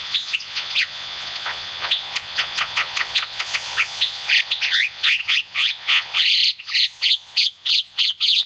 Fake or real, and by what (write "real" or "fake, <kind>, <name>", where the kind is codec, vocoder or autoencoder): fake, vocoder, Vocos